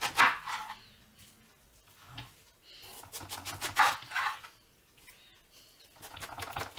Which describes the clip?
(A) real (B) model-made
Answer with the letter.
A